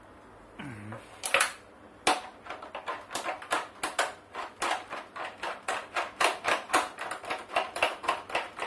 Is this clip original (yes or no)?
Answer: yes